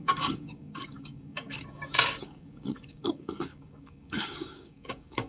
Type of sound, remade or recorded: remade